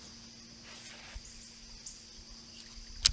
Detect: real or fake real